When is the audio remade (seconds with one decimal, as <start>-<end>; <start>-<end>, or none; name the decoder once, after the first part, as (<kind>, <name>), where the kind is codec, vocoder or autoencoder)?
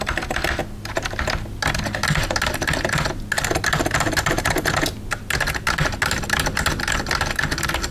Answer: none